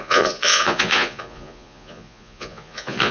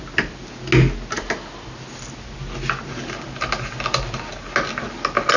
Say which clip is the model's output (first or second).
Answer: first